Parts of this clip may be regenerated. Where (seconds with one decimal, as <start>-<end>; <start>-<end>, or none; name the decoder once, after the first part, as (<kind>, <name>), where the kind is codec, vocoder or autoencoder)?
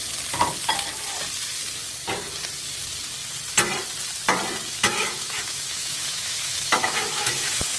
4.7-7.8 (autoencoder, DAC-VAE)